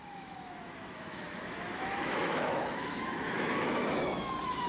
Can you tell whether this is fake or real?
fake